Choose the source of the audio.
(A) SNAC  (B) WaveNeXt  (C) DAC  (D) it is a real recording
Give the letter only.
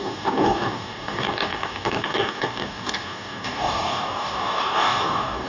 C